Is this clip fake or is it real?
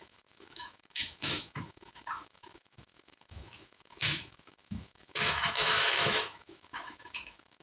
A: fake